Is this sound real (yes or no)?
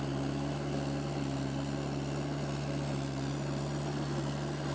yes